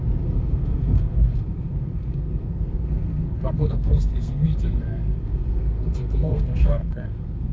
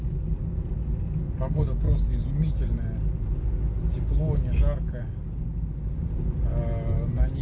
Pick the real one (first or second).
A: second